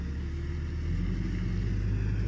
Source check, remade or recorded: recorded